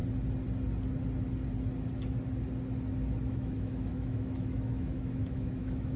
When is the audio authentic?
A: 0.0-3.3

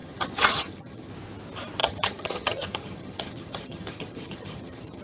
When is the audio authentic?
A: 1.1-1.8

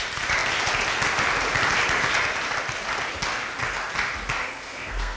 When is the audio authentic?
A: 0.0-4.4